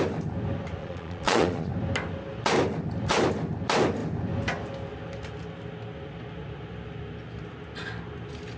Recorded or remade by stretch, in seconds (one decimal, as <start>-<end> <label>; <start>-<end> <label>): 0.0-0.8 recorded; 0.8-1.7 remade; 1.7-8.6 recorded

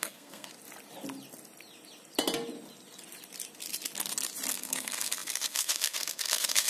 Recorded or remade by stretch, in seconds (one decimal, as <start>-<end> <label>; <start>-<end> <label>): 0.0-0.5 remade; 0.5-4.5 recorded; 4.5-6.7 remade

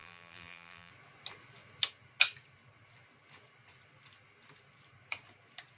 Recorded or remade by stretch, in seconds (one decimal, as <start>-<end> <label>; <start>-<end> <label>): 0.0-0.9 remade; 0.9-5.8 recorded

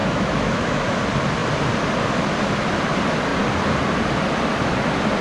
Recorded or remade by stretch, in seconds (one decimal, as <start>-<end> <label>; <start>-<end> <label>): 0.0-1.0 remade; 1.0-5.2 recorded

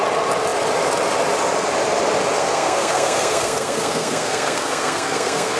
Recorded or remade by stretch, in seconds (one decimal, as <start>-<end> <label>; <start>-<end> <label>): 0.0-2.4 recorded; 2.4-5.6 remade

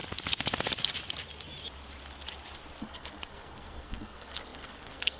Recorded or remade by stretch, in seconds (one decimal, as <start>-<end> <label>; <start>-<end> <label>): 0.0-2.8 recorded; 2.8-5.2 remade

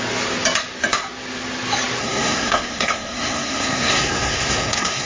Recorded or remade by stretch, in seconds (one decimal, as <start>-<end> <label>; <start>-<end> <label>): 0.0-2.0 recorded; 2.0-5.1 remade

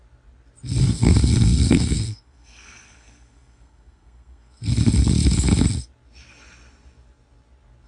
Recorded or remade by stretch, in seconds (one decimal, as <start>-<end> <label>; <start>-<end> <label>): 0.0-0.8 recorded; 0.8-4.6 remade; 4.6-7.9 recorded